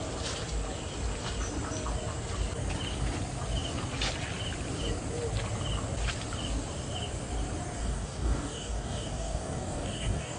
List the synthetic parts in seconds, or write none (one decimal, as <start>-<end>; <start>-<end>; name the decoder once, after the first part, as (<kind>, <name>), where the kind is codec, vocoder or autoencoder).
7.8-10.4 (codec, DAC)